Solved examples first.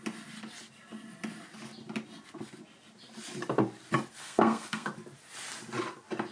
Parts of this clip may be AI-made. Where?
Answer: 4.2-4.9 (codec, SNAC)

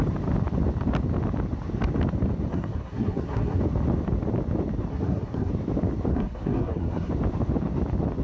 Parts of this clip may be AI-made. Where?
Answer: 2.5-3.6 (codec, SNAC); 4.9-5.5; 6.1-7.1

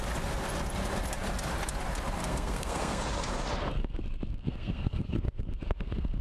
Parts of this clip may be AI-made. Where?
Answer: 2.2-3.0 (codec, SNAC); 3.8-6.2

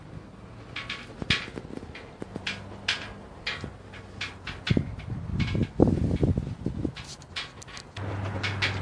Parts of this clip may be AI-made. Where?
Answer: none

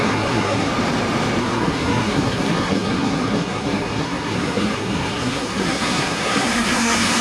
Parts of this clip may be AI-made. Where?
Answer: 0.0-0.7 (codec, SNAC); 1.4-7.2